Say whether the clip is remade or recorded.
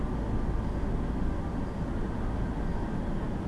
recorded